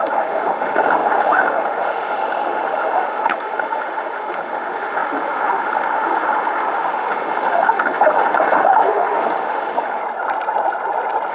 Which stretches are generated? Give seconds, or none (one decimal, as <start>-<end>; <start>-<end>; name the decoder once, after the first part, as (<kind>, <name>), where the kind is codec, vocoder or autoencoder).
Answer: 0.0-10.0 (autoencoder, DAC-VAE)